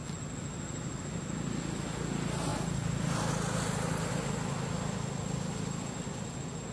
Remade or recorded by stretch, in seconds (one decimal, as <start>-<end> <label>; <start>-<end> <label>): 0.0-6.7 recorded